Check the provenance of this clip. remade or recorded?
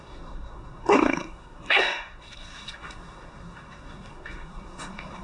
remade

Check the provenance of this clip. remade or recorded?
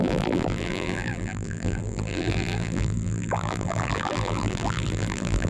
remade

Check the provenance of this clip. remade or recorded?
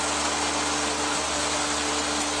recorded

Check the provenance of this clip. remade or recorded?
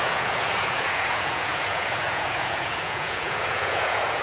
remade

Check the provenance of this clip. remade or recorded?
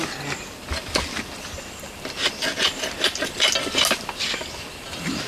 recorded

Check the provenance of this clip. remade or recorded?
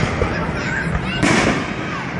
recorded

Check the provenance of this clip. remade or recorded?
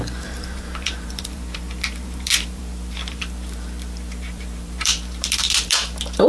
remade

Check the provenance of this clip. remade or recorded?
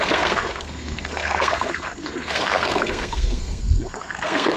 remade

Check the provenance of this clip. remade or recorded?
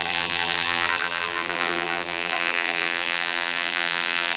remade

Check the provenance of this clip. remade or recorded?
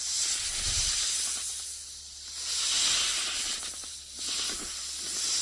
recorded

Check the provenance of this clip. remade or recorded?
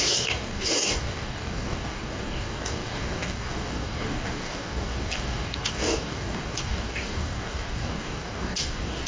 remade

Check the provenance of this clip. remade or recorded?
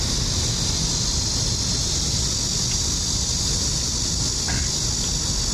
recorded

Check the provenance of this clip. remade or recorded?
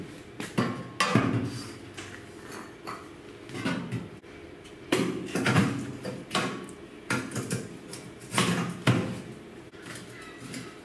recorded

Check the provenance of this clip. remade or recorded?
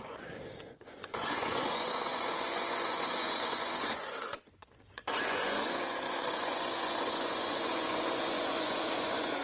remade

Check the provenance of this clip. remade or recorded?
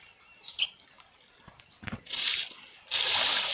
recorded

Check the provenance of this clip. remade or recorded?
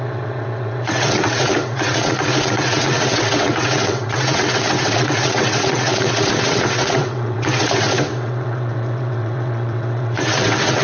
remade